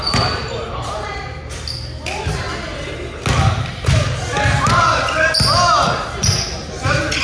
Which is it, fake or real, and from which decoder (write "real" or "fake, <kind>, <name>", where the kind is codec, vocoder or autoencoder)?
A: real